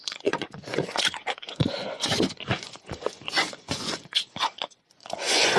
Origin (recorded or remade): remade